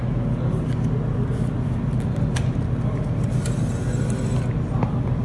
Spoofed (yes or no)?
no